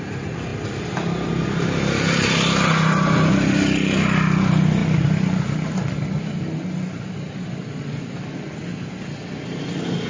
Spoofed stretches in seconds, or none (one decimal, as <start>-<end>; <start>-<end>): none